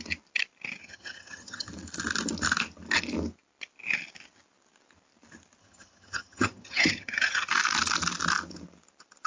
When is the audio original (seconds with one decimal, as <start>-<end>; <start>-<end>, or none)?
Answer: 0.0-0.8; 1.7-5.6; 7.5-9.3